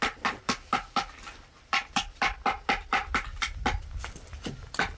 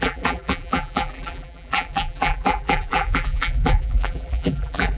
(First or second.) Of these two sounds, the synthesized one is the second